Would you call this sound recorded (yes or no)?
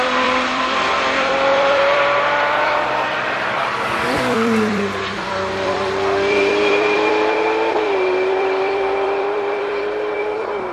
no